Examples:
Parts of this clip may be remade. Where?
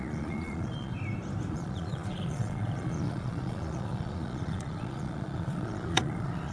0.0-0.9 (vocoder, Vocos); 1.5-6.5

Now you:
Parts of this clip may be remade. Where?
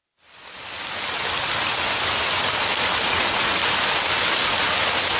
3.1-3.6 (vocoder, Vocos)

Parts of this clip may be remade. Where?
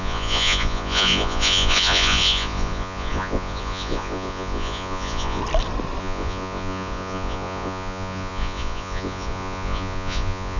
0.0-5.4 (vocoder, Vocos); 6.0-10.6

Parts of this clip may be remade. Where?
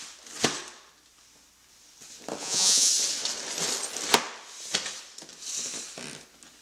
2.4-2.9 (vocoder, Vocos)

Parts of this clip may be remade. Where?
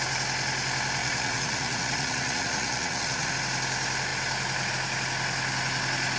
1.0-3.3 (vocoder, Vocos)